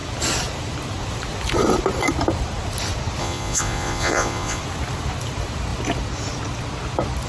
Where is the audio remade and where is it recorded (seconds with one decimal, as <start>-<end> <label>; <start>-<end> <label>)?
0.0-3.2 recorded; 3.2-4.6 remade; 4.6-7.3 recorded